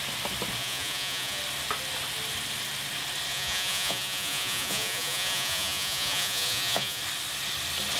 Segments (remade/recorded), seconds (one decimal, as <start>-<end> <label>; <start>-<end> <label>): 0.0-0.6 recorded; 0.6-1.4 remade; 1.4-3.3 recorded; 3.3-7.0 remade; 7.0-8.0 recorded